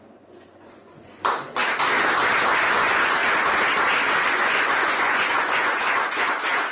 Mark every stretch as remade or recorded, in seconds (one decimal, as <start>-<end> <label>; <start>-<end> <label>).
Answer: 0.0-1.6 remade; 1.6-2.5 recorded; 2.5-3.2 remade; 3.2-4.3 recorded; 4.3-6.7 remade